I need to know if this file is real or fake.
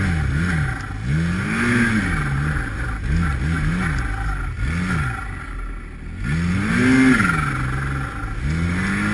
real